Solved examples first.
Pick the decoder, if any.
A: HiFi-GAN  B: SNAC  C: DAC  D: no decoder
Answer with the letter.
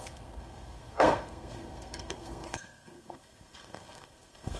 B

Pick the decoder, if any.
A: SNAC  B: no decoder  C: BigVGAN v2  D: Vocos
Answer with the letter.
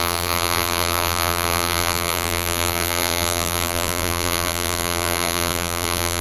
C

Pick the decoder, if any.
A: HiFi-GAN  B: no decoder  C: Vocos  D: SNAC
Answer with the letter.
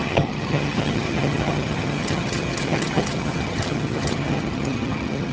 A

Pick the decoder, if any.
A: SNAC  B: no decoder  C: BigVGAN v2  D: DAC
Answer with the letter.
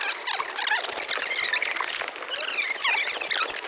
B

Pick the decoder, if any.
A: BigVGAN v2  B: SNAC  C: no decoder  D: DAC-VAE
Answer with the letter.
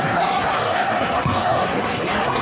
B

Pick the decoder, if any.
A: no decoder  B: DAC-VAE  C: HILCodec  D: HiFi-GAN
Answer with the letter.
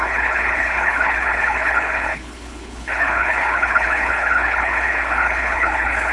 C